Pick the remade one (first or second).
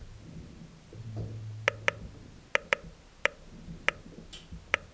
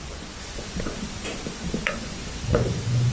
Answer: second